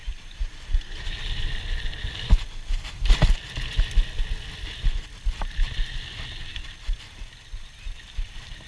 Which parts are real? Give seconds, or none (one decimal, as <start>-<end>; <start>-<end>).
0.0-8.7